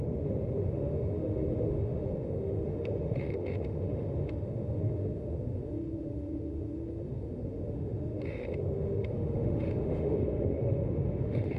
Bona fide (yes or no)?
no